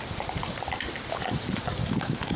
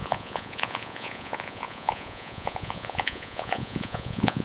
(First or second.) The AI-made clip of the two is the second